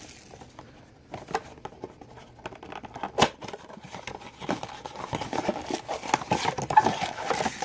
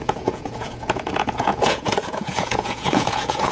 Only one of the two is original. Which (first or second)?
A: first